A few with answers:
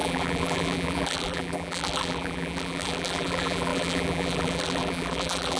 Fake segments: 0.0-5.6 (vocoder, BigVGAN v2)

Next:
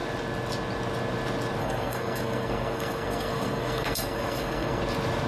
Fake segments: 1.6-4.8 (codec, SNAC)